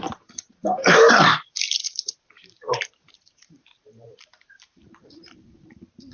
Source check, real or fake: fake